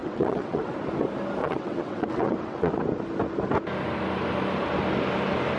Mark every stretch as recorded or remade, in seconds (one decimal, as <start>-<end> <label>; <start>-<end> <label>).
0.0-0.7 remade; 0.7-1.4 recorded; 1.4-2.7 remade; 2.7-5.6 recorded